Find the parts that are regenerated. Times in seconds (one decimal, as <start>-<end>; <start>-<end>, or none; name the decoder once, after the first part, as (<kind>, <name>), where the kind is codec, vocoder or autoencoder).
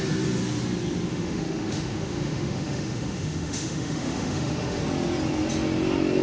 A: 1.1-4.8 (autoencoder, DAC-VAE)